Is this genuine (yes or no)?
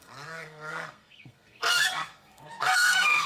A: no